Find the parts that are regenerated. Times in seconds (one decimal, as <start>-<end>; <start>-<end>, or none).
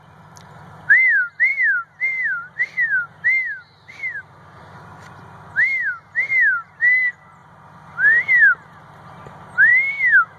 9.7-10.4